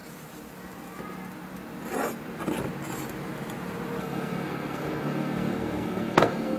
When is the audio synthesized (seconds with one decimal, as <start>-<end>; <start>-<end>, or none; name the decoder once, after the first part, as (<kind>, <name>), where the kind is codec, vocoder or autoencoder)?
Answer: 4.0-6.6 (codec, SNAC)